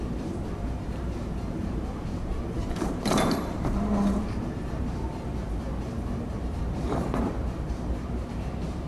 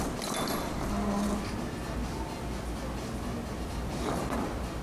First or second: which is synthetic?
first